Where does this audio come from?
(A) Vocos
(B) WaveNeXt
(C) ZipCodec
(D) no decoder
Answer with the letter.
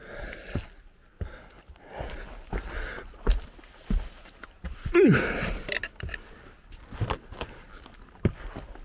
D